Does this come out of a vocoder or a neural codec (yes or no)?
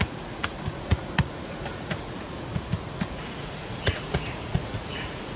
yes